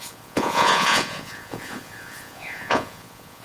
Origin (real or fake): fake